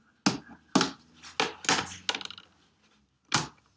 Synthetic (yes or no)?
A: no